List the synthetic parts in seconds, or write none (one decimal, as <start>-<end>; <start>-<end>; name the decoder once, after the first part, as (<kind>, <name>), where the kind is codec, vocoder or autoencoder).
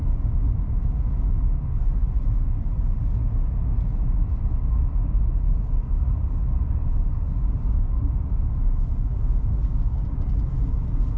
4.2-6.3 (vocoder, BigVGAN v2)